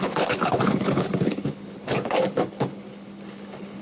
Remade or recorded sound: remade